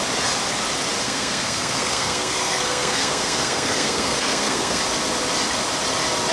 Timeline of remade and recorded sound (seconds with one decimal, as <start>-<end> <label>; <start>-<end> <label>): 0.0-1.0 recorded; 1.0-4.8 remade; 4.8-6.3 recorded